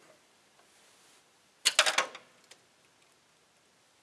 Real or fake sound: real